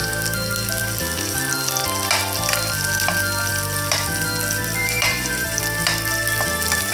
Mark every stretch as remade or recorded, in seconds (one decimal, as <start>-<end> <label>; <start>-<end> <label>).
0.0-4.8 recorded; 4.8-5.6 remade; 5.6-6.9 recorded